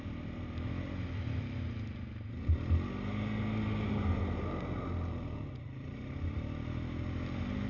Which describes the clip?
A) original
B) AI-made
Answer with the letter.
A